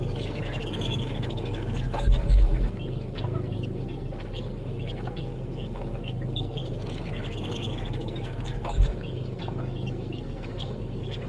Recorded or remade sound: remade